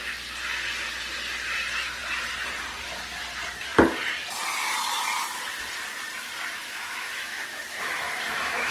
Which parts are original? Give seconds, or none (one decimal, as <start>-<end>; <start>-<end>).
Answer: 0.0-6.6